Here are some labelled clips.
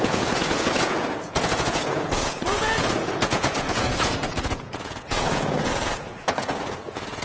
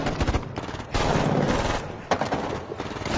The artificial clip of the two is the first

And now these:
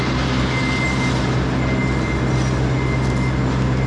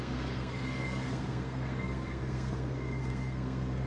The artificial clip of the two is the second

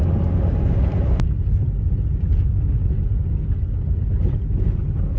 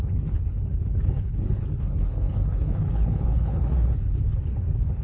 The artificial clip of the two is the second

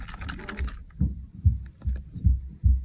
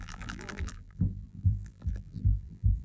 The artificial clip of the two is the second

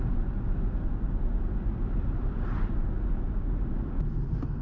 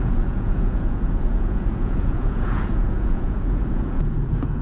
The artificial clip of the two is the second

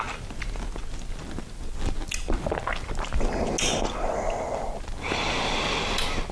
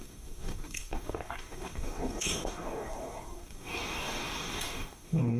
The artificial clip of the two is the second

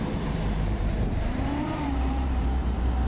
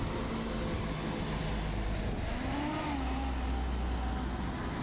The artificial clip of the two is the first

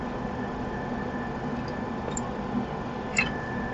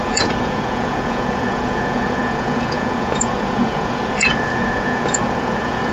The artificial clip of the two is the second